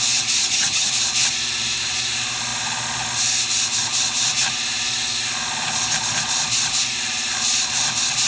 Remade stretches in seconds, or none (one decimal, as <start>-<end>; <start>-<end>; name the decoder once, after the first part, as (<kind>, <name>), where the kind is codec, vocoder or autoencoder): 0.4-0.9 (vocoder, HiFi-GAN)